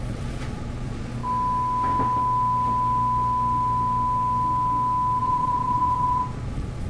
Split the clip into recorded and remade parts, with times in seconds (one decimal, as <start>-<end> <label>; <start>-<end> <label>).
0.0-1.2 remade; 1.2-5.2 recorded; 5.2-6.9 remade